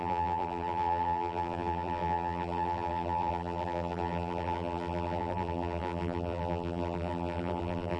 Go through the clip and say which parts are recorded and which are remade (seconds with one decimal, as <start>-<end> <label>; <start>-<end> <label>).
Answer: 0.0-8.0 remade